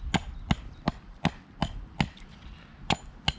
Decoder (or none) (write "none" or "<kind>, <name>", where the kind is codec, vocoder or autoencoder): none